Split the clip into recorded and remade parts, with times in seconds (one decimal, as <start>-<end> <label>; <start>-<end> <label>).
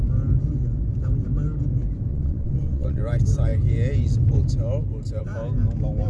0.0-2.1 recorded; 2.1-3.0 remade; 3.0-6.1 recorded